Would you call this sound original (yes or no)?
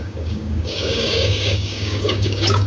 no